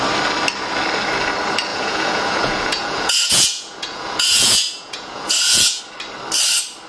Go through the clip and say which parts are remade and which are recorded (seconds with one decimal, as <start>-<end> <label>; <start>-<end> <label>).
0.0-1.7 recorded; 1.7-5.8 remade; 5.8-6.9 recorded